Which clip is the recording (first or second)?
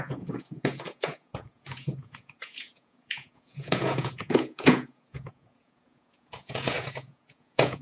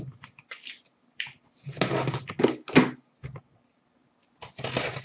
second